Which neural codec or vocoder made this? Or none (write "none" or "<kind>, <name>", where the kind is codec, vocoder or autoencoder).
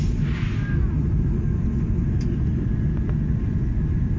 none